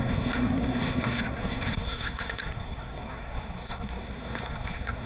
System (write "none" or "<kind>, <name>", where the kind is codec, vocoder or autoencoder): codec, SNAC